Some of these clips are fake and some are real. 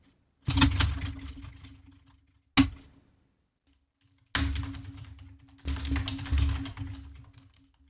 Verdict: real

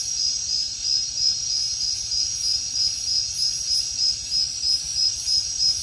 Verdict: real